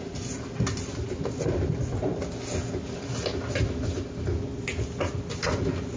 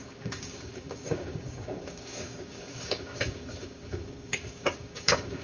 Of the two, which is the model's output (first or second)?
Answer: second